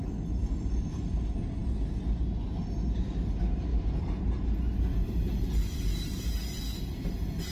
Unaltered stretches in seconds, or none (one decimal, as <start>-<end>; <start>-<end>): 0.0-7.5